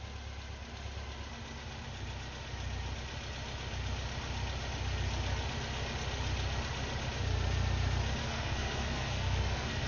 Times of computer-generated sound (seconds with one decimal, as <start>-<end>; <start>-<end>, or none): 8.2-9.9